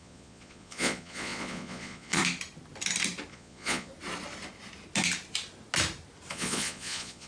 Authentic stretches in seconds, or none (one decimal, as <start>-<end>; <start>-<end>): 2.2-3.3; 3.9-6.3